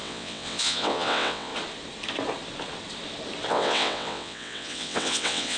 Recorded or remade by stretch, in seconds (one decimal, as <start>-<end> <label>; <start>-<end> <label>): 0.0-1.5 remade; 1.5-3.5 recorded; 3.5-5.6 remade